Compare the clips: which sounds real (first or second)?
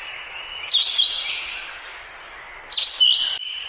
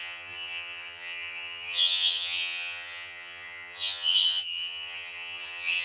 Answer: first